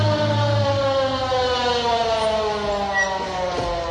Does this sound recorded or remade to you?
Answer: recorded